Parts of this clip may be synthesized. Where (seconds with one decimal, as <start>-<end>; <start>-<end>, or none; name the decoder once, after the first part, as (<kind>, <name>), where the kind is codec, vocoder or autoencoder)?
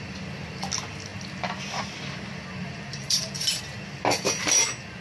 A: 2.9-3.6 (vocoder, BigVGAN v2)